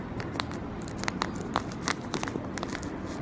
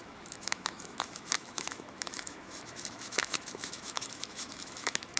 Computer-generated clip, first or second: second